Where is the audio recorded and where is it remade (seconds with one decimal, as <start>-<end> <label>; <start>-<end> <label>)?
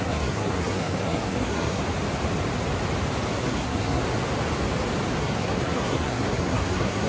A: 0.0-1.8 remade; 1.8-3.4 recorded; 3.4-4.0 remade; 4.0-5.2 recorded; 5.2-7.1 remade